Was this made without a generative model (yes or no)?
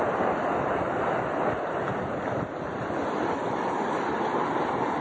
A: yes